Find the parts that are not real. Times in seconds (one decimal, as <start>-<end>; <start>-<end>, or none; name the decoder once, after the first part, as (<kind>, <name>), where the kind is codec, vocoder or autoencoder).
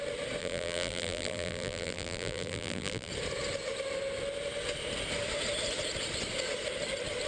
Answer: 0.4-3.1 (vocoder, BigVGAN v2)